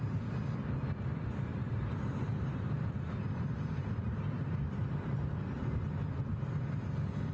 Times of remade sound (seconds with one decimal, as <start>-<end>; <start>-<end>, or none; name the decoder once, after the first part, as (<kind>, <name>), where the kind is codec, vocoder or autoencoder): 1.5-5.4 (vocoder, BigVGAN v2)